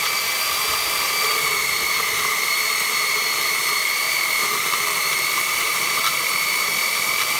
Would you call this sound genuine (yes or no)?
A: no